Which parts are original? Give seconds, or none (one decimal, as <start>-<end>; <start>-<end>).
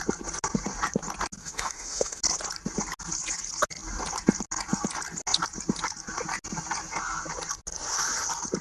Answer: 0.0-1.4; 2.2-8.6